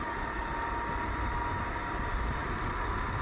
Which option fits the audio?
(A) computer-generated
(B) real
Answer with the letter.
B